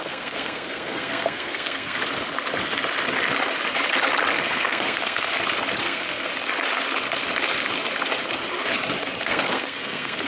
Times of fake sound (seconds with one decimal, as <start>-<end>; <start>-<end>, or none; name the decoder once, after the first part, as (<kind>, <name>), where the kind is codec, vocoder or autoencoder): 0.0-2.0 (codec, SNAC); 4.3-5.3; 5.8-6.3; 9.2-10.3